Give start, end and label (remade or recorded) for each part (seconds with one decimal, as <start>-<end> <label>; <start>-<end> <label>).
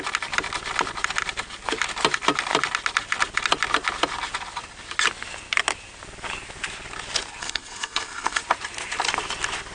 0.0-7.4 recorded; 7.4-8.4 remade; 8.4-9.7 recorded